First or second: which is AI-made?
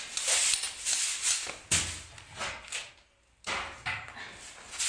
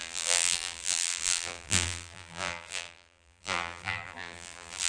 second